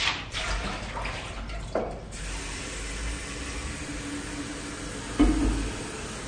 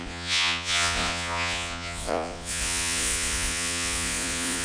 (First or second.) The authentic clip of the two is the first